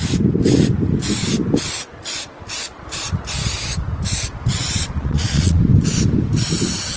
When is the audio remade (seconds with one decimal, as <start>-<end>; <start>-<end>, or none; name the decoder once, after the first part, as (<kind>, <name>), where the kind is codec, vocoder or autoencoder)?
4.8-5.6 (vocoder, Vocos)